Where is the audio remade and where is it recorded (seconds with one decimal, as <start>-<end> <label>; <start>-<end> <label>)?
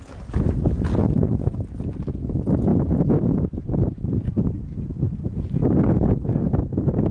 0.0-1.0 recorded; 1.0-1.5 remade; 1.5-7.1 recorded